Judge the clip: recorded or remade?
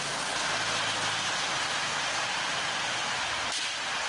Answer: recorded